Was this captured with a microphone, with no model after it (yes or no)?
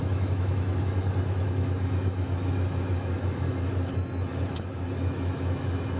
no